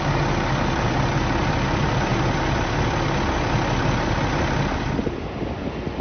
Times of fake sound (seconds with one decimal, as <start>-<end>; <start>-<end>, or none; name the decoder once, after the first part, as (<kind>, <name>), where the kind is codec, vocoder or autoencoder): none

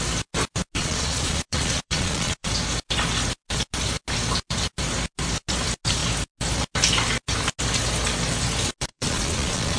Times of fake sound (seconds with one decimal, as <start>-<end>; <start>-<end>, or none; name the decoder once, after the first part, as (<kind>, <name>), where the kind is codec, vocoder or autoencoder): 0.8-2.5 (vocoder, Vocos); 8.9-9.8